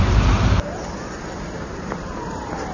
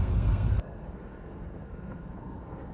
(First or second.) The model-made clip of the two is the second